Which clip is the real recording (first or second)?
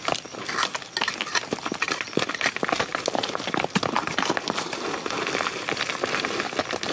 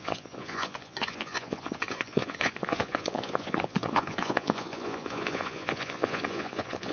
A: first